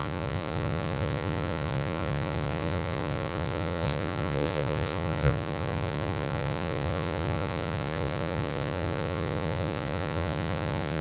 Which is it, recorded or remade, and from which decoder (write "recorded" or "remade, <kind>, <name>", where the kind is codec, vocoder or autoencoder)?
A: remade, vocoder, Vocos